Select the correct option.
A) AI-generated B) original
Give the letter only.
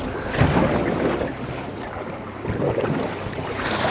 B